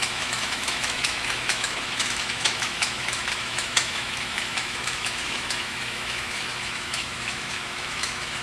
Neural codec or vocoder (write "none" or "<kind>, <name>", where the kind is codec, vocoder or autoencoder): autoencoder, DAC-VAE